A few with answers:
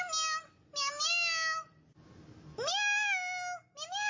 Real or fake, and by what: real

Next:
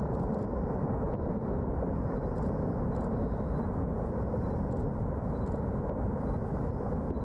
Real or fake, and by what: real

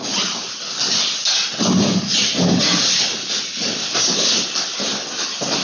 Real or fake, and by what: real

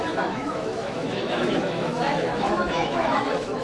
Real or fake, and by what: fake, autoencoder, DAC-VAE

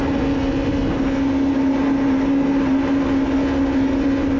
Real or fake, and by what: real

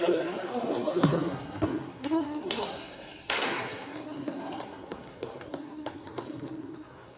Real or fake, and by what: fake, codec, SNAC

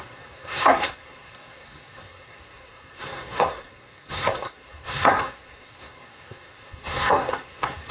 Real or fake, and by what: fake, codec, SNAC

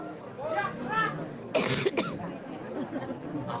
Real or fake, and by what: real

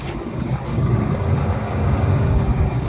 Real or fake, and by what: fake, codec, DAC